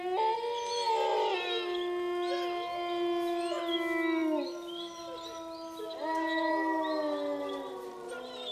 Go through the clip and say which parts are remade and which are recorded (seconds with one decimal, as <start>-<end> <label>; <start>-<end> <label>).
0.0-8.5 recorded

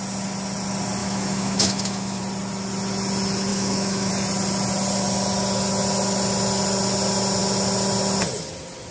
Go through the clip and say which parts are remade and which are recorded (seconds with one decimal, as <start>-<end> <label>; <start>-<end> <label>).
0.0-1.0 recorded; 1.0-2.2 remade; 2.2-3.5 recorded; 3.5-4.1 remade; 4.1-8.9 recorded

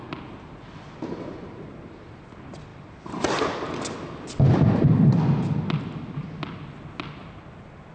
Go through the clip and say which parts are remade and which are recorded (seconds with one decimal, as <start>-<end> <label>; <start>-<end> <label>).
0.0-7.9 recorded